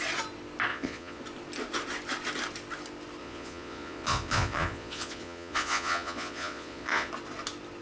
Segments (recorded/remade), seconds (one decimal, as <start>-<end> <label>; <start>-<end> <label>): 0.0-0.7 recorded; 0.7-1.2 remade; 1.2-3.2 recorded; 3.2-7.1 remade; 7.1-7.8 recorded